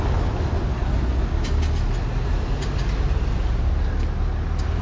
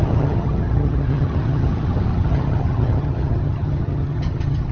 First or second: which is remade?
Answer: second